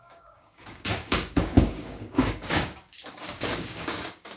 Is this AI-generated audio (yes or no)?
yes